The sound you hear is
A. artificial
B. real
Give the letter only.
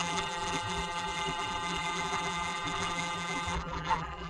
A